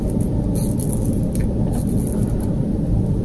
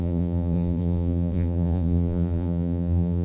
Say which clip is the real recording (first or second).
first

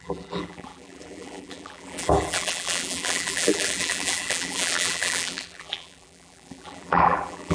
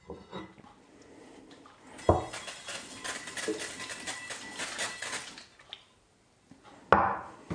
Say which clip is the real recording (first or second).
second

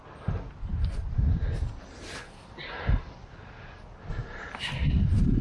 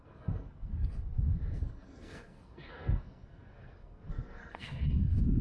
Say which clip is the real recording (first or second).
first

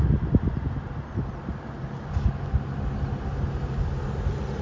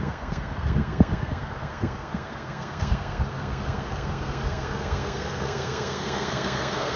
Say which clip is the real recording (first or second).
first